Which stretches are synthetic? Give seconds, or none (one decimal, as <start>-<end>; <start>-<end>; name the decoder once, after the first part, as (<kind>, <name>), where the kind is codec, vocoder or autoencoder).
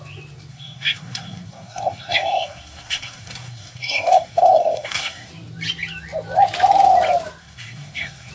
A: 0.5-5.3 (codec, SNAC); 7.4-8.3